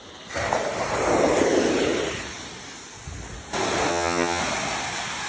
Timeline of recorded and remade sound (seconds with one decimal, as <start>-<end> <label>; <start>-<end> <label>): 0.0-3.9 recorded; 3.9-4.4 remade; 4.4-5.3 recorded